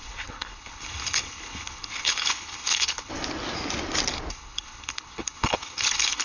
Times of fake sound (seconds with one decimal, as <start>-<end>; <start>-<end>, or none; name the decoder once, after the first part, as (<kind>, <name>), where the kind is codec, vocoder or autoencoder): 0.0-3.1 (codec, HILCodec); 4.3-6.2